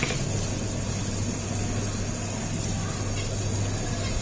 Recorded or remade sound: recorded